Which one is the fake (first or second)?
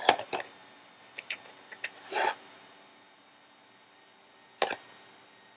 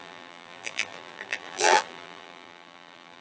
second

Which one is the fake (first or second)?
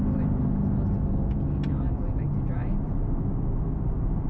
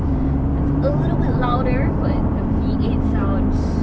second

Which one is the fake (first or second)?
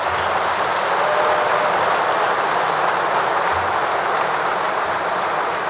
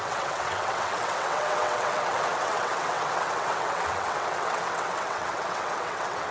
second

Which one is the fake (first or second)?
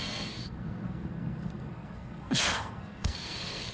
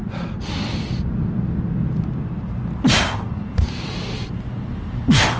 first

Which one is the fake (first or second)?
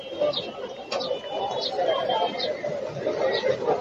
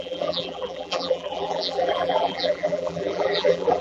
second